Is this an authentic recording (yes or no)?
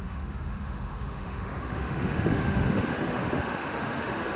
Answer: no